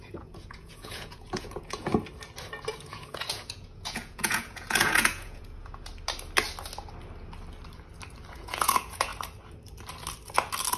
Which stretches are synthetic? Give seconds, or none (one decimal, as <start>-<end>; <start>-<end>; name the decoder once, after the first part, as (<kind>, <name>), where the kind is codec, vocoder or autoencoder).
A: 0.0-1.9 (vocoder, Vocos); 2.7-5.9; 8.3-9.1